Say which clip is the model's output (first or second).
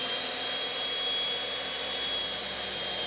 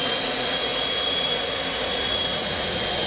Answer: second